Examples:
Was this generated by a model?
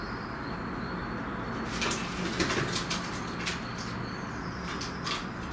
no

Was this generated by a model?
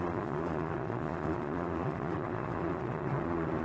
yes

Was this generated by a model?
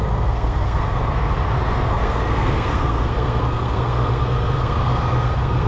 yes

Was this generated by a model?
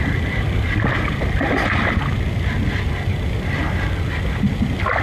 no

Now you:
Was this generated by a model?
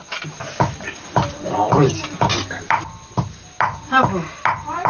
no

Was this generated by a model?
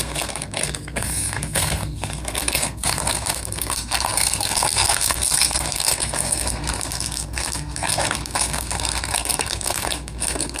yes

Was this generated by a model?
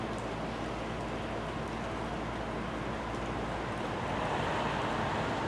no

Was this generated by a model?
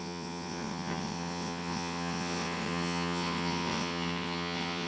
yes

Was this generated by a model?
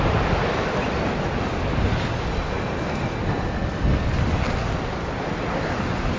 no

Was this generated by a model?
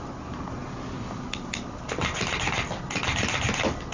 no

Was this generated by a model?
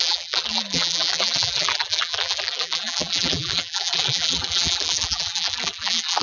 yes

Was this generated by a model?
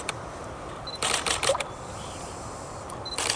no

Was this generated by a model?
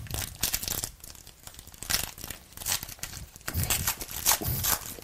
no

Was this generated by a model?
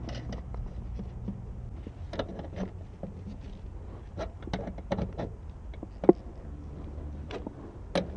no